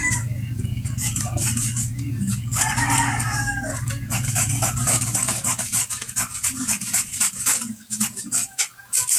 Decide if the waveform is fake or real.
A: fake